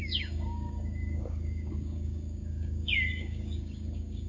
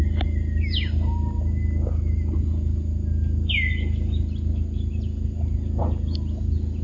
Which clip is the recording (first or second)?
second